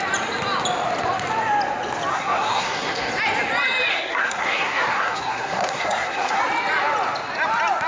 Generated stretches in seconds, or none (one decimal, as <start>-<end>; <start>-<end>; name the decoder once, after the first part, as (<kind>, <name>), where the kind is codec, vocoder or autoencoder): 2.1-3.1 (codec, SNAC); 3.9-6.4